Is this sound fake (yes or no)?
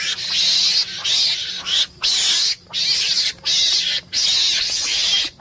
no